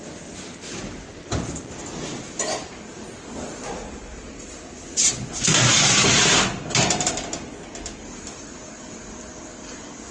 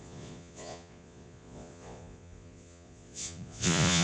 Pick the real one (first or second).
first